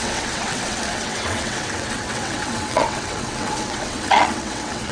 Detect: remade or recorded remade